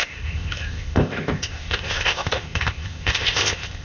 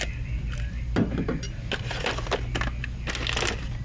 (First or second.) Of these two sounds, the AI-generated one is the first